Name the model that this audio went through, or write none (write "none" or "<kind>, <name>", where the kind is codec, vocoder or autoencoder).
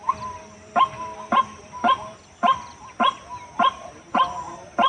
none